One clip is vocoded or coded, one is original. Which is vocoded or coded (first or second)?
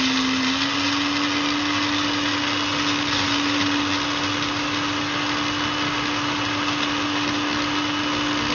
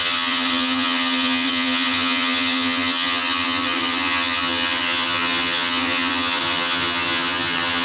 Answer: second